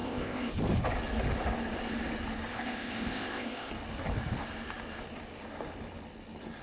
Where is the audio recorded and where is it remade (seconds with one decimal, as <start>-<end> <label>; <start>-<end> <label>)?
0.0-0.5 remade; 0.5-2.5 recorded; 2.5-3.7 remade; 3.7-6.6 recorded